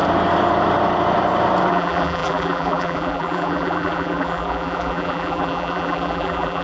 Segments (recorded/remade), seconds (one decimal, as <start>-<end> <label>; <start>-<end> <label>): 0.0-1.7 recorded; 1.7-6.6 remade